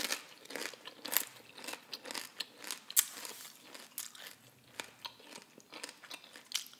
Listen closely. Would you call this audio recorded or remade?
recorded